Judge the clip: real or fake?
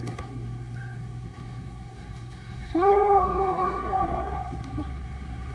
fake